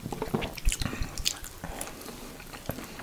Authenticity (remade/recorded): remade